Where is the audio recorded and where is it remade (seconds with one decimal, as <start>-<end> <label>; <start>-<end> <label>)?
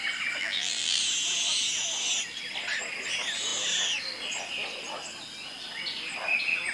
0.0-0.4 recorded; 0.4-1.0 remade; 1.0-6.7 recorded